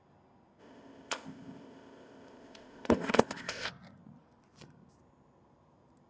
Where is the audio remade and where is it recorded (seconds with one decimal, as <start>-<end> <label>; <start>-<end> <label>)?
0.0-0.6 recorded; 0.6-3.7 remade; 3.7-6.1 recorded